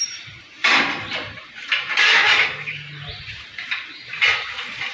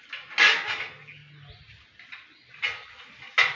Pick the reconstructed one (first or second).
first